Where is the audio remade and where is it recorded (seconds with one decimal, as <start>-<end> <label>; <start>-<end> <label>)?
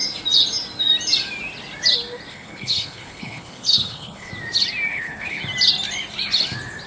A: 0.0-2.3 recorded; 2.3-4.3 remade; 4.3-4.9 recorded; 4.9-5.4 remade; 5.4-6.9 recorded